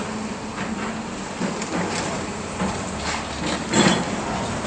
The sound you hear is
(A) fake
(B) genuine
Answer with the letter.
B